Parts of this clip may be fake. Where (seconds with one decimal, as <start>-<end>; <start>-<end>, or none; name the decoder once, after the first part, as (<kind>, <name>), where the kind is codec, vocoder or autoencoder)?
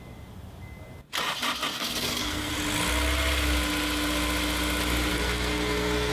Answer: 1.7-2.5 (codec, SNAC); 5.1-6.1